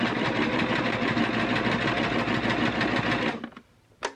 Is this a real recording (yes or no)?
yes